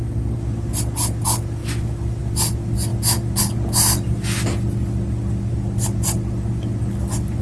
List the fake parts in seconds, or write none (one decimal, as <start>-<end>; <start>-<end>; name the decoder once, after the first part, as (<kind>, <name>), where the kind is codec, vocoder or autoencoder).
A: none